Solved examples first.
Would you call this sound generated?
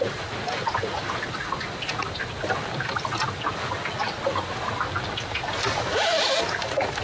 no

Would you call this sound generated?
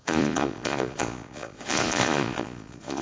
yes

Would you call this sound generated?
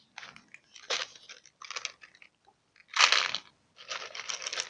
no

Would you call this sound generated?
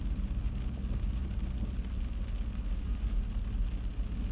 no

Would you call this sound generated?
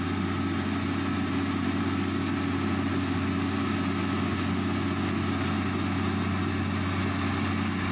no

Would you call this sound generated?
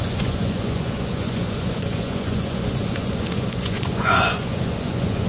yes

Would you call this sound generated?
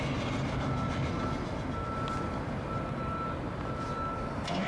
no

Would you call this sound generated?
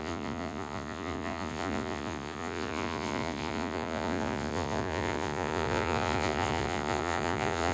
yes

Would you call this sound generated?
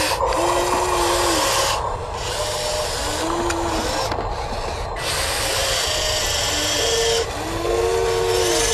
no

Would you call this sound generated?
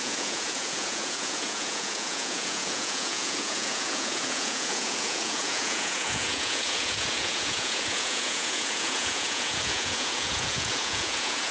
yes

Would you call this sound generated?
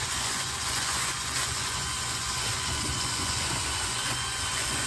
yes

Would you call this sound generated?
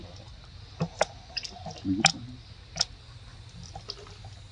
no